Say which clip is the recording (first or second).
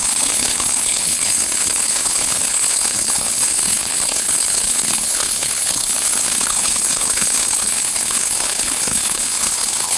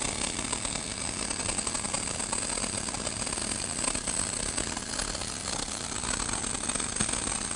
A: second